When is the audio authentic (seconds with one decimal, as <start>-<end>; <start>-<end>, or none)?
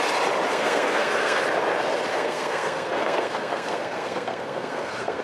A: 0.0-0.5; 1.4-2.1